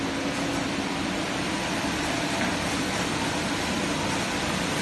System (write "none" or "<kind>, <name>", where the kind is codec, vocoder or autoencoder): vocoder, BigVGAN v2